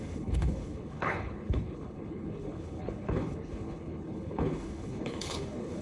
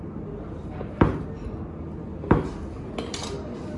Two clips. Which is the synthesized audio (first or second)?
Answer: first